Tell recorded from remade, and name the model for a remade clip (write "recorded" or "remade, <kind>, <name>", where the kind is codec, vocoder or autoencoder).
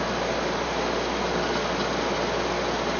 recorded